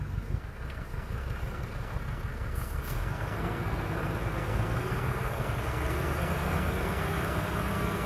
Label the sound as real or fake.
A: fake